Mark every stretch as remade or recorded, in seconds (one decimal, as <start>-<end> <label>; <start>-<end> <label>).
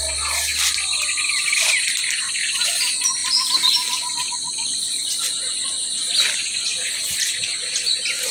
0.0-8.3 recorded